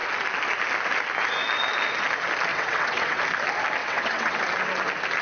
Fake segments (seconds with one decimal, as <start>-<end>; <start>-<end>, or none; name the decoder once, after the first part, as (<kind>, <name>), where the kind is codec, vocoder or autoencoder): 2.5-3.2 (vocoder, WaveNeXt); 3.8-4.4